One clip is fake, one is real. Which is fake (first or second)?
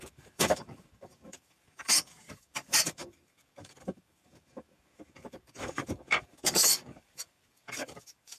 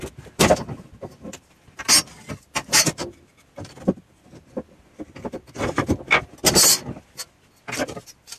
first